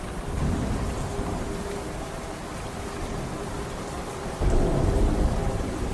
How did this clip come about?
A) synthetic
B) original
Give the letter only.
B